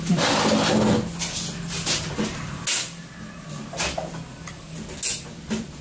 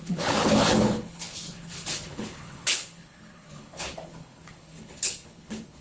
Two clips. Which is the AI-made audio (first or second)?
second